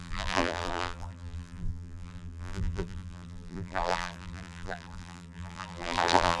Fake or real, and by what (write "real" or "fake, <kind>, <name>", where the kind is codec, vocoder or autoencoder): fake, vocoder, BigVGAN v2